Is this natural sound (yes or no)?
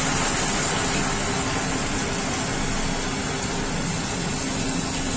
yes